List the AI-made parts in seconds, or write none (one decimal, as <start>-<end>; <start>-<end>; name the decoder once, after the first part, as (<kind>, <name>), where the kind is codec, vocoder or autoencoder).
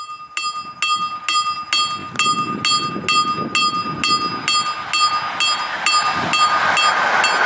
none